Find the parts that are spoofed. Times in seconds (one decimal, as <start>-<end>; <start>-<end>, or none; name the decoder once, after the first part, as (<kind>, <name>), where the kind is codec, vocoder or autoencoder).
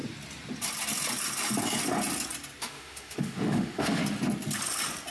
2.6-4.0 (autoencoder, DAC-VAE)